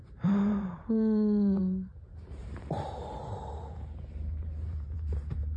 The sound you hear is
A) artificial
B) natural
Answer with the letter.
A